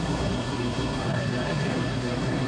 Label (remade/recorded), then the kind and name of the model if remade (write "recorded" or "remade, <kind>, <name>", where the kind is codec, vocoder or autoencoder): remade, codec, SNAC